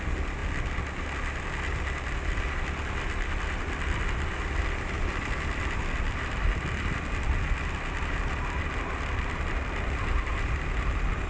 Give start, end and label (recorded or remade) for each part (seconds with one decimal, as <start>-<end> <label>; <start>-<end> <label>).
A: 0.0-11.3 recorded